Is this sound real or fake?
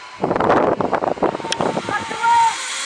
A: real